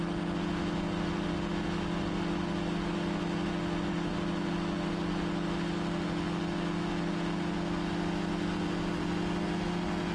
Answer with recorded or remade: recorded